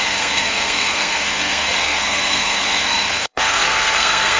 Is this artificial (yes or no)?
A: yes